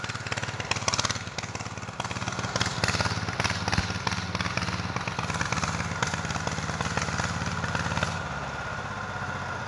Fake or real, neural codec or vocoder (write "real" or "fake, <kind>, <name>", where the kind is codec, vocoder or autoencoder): real